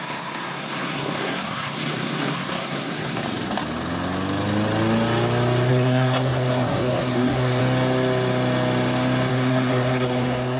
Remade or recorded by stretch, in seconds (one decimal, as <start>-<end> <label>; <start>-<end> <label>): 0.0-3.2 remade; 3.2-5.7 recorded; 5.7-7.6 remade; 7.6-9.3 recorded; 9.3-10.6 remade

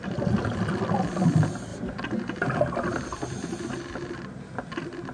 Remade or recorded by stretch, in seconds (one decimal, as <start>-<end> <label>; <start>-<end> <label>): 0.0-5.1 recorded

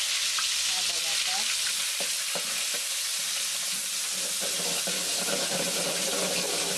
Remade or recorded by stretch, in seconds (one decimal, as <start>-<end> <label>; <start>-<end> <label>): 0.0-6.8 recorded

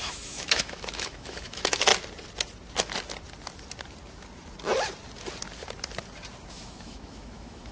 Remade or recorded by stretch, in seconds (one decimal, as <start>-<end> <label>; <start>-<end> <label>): 0.0-1.9 remade; 1.9-6.5 recorded; 6.5-7.7 remade

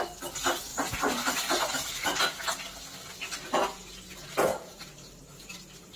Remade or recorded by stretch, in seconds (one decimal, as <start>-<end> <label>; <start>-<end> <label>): 0.0-0.7 recorded; 0.7-2.2 remade; 2.2-4.5 recorded; 4.5-6.0 remade